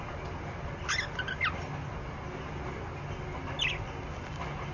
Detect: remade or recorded recorded